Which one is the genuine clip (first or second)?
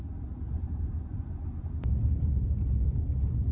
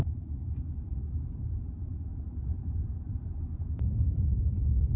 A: first